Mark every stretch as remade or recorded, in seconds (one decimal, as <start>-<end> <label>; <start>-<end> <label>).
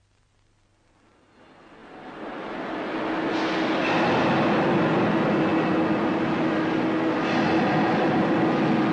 0.0-8.9 recorded